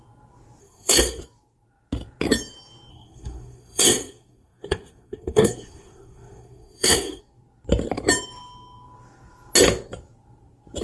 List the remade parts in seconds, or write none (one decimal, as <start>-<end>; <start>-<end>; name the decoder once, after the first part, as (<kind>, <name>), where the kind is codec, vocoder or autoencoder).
0.6-1.2 (codec, SNAC); 2.9-7.2

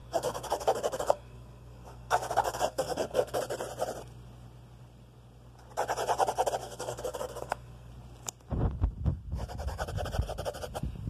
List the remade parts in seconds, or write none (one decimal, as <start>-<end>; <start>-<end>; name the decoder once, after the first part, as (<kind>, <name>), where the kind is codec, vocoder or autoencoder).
0.0-3.4 (codec, SNAC); 6.6-7.9

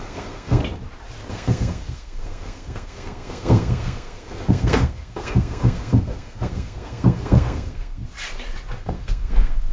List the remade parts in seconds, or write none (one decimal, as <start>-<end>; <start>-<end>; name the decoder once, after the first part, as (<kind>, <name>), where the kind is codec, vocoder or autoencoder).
0.0-0.6 (codec, SNAC); 1.3-8.0; 8.8-9.7

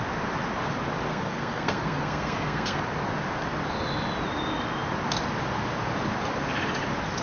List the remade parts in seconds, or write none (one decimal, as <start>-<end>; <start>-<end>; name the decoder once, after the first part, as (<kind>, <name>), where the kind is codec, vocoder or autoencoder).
1.1-2.8 (codec, SNAC)

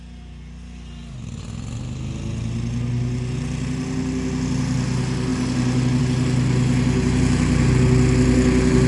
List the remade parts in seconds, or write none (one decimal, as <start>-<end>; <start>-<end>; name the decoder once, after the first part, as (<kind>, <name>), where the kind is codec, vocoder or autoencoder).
none

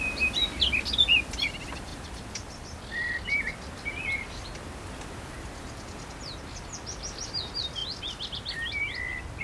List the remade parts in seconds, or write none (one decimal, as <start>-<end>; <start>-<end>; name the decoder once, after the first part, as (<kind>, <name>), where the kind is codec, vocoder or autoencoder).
none

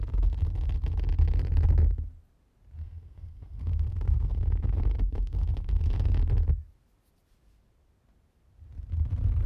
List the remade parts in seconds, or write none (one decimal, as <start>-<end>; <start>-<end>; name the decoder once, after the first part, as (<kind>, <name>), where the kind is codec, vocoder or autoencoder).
2.8-6.2 (codec, SNAC)